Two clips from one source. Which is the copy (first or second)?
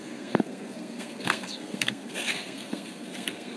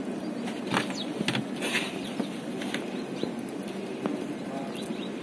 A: first